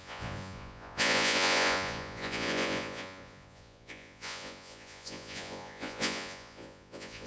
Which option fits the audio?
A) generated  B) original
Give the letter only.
A